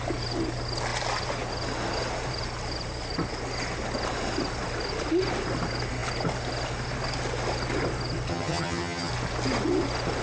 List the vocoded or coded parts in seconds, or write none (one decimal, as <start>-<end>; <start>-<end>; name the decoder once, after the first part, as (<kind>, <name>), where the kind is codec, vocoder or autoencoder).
8.3-9.1 (vocoder, HiFi-GAN)